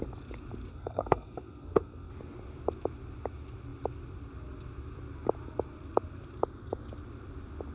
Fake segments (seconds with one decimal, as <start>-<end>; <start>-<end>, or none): 0.7-2.1